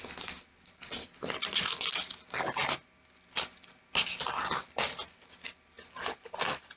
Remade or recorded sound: recorded